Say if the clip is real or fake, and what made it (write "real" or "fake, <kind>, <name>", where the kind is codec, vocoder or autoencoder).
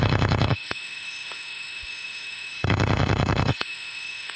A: fake, autoencoder, DAC-VAE